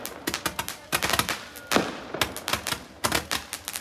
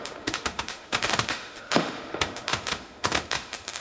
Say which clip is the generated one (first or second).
second